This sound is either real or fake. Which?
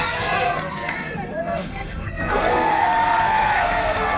fake